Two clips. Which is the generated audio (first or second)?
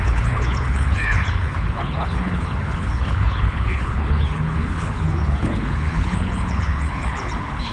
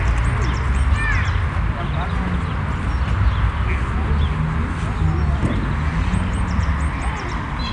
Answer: first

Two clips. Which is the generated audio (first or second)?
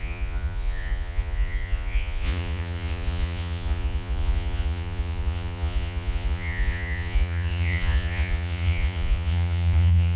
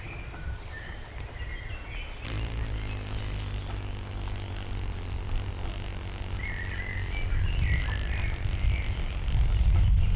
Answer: first